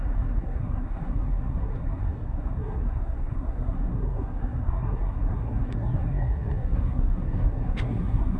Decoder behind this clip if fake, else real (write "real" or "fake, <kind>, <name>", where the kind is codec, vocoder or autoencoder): fake, codec, SNAC